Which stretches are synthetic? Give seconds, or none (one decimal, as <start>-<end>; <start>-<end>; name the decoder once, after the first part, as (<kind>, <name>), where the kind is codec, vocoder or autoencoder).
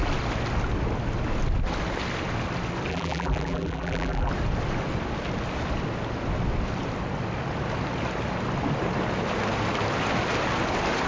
2.9-4.3 (vocoder, BigVGAN v2)